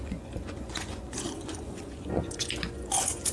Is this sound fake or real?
fake